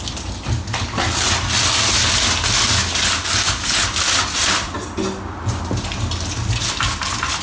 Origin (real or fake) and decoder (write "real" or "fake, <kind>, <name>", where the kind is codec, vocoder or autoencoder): real